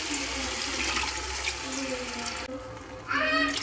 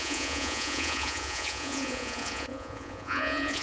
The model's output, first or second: second